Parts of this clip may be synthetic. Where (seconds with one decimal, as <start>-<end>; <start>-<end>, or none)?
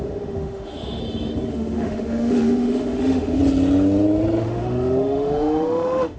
0.0-1.0; 1.5-3.4; 4.4-6.2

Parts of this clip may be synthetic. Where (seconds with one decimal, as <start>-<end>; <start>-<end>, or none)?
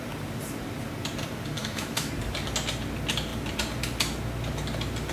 1.6-2.1